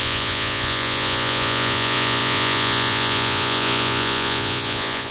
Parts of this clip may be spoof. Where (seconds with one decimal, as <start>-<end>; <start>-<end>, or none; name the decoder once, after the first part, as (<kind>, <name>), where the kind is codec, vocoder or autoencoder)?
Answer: 0.0-5.1 (vocoder, Vocos)